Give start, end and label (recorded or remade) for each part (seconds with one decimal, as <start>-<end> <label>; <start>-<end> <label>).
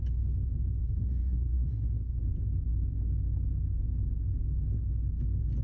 0.0-0.8 recorded; 0.8-2.2 remade; 2.2-5.6 recorded